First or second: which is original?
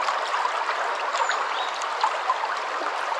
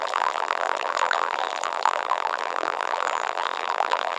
first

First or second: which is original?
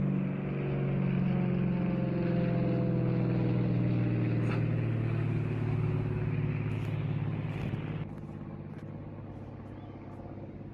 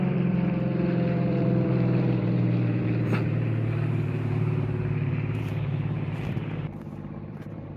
first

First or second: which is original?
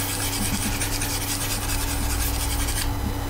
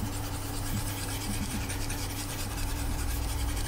first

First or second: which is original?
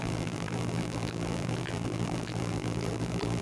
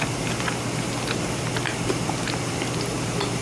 second